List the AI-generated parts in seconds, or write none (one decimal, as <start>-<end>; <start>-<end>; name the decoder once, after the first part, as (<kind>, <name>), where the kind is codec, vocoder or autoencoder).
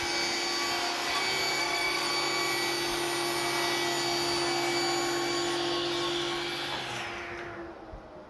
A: 1.6-2.1 (codec, SNAC)